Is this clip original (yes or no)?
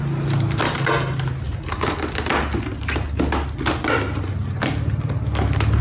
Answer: yes